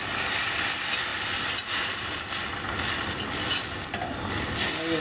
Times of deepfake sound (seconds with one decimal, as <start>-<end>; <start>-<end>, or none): none

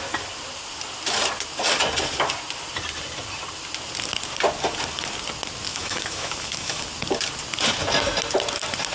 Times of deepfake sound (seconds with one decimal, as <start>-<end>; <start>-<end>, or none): 5.7-6.8